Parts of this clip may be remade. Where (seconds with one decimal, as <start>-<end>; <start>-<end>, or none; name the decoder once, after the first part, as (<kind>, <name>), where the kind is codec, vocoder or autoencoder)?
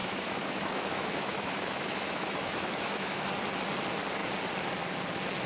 0.0-3.3 (autoencoder, DAC-VAE)